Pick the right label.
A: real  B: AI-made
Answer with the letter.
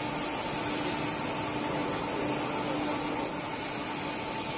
A